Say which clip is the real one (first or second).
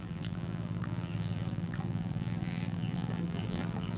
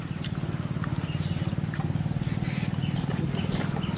second